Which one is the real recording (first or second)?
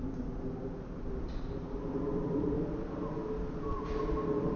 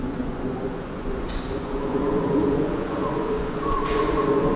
first